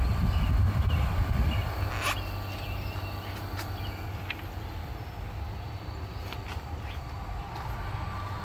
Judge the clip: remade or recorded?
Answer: recorded